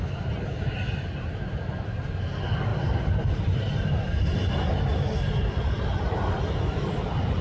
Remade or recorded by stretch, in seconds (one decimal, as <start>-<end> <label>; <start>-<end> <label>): 0.0-2.7 recorded; 2.7-4.7 remade; 4.7-7.4 recorded